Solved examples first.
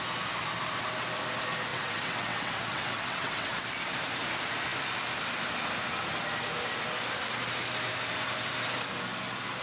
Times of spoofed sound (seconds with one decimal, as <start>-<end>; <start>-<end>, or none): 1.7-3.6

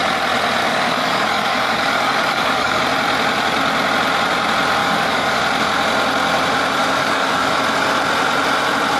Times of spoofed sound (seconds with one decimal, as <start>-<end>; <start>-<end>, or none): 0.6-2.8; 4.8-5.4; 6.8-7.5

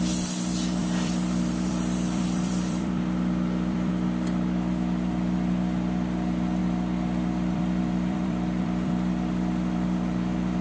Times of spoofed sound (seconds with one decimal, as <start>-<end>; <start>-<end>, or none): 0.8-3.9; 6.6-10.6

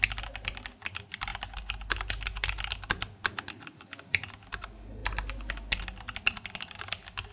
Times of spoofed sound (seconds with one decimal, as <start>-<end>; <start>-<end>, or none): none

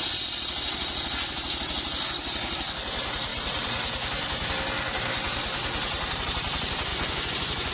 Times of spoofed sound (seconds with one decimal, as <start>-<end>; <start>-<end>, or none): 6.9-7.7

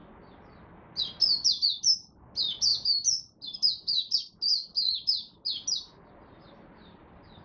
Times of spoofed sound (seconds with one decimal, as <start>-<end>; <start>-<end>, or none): none